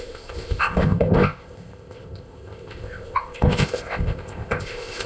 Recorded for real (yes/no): no